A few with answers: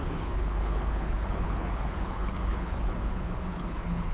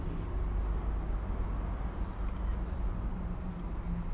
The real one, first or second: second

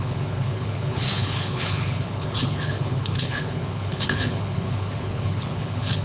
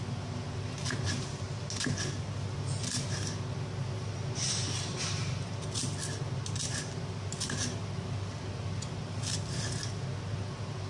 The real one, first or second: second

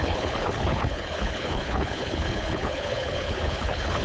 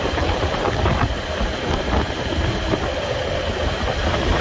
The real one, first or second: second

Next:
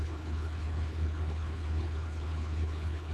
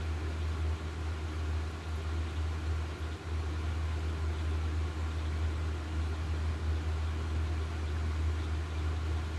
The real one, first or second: second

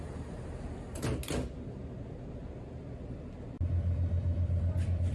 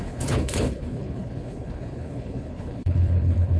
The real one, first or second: first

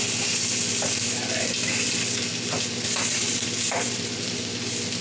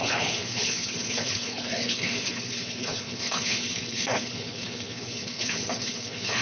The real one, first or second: first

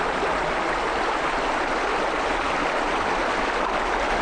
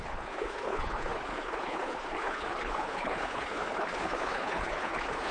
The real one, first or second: first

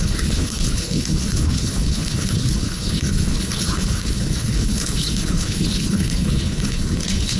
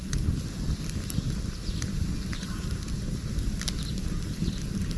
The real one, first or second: second